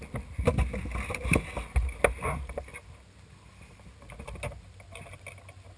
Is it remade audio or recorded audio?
recorded